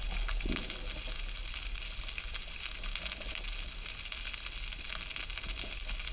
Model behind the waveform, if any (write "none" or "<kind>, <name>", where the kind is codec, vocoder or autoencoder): none